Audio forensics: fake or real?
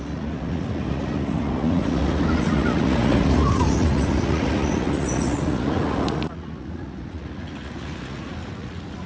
fake